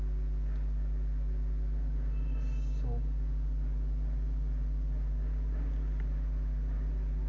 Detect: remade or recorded recorded